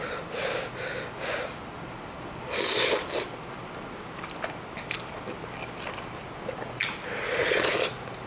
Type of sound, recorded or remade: recorded